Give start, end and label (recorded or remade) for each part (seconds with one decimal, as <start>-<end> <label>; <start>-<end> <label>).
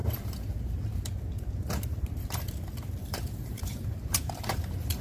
0.0-3.0 recorded; 3.0-5.0 remade